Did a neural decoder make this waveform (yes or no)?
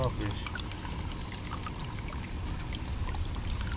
no